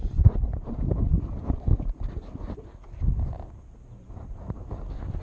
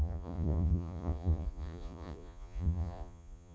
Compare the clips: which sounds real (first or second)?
first